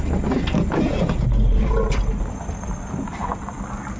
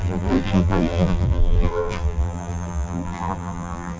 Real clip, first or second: first